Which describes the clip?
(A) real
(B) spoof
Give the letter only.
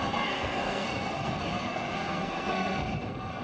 B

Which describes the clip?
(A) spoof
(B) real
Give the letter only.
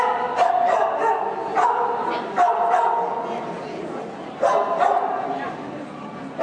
B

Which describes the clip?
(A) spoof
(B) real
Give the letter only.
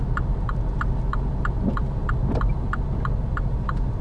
B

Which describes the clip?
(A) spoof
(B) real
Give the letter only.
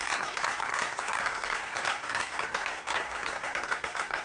A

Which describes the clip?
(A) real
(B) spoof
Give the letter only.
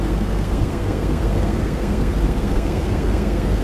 B